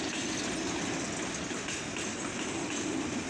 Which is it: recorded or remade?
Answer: recorded